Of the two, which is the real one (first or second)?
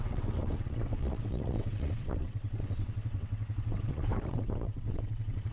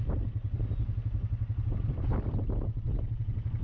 second